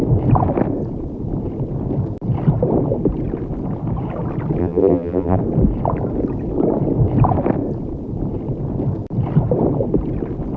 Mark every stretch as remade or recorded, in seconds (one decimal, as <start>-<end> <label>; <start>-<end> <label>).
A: 0.0-4.6 recorded; 4.6-5.4 remade; 5.4-10.6 recorded